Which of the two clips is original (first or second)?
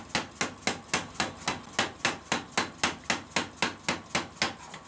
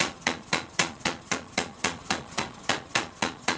first